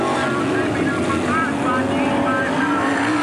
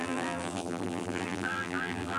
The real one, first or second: first